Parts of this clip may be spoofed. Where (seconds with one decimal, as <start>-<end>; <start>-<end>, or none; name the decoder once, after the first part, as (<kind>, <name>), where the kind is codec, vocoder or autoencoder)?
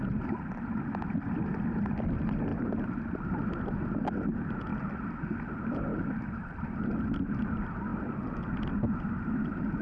5.9-6.6 (vocoder, BigVGAN v2)